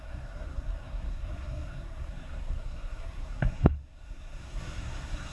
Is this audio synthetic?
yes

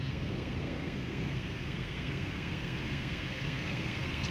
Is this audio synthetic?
yes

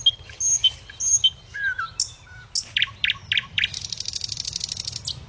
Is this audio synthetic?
no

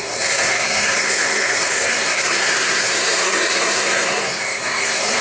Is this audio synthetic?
yes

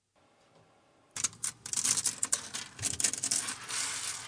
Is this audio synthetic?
no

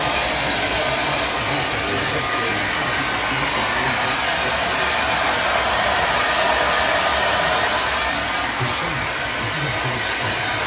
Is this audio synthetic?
no